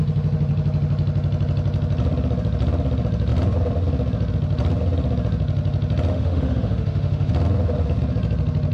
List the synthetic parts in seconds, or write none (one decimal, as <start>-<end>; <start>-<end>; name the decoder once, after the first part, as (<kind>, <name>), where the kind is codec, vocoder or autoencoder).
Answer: 6.1-7.3 (autoencoder, DAC-VAE)